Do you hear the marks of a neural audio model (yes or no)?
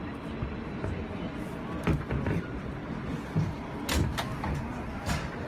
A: no